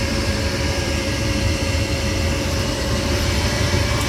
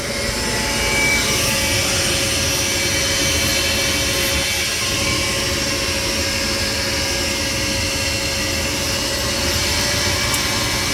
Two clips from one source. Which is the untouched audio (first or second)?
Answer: second